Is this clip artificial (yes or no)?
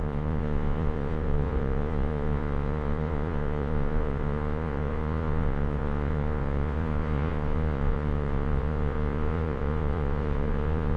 yes